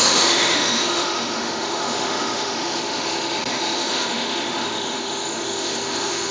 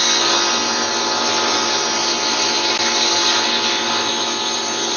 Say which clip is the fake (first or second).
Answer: first